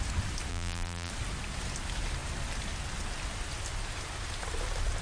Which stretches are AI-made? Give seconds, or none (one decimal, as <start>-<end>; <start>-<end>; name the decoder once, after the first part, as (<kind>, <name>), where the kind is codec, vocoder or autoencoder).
0.5-1.1 (vocoder, BigVGAN v2)